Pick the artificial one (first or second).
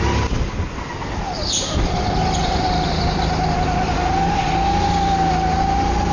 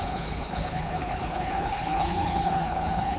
second